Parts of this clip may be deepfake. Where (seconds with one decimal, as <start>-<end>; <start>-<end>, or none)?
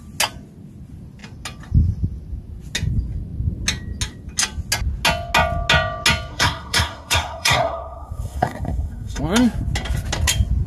6.3-9.2